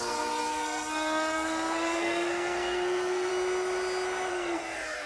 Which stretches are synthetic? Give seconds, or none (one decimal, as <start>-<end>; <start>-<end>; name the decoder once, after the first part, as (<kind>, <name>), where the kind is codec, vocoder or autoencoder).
0.0-3.3 (codec, SNAC); 4.3-5.1